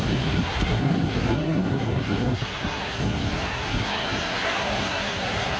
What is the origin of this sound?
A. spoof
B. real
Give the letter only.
A